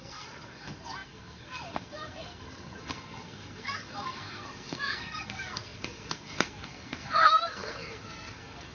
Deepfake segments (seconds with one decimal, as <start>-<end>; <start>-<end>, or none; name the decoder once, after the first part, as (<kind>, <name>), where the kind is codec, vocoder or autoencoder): 0.0-8.7 (codec, SNAC)